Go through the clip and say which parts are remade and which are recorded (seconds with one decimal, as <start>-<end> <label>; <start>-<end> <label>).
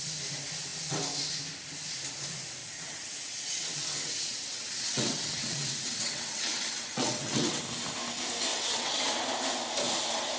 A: 0.0-2.6 recorded; 2.6-7.6 remade; 7.6-8.5 recorded; 8.5-9.1 remade; 9.1-10.4 recorded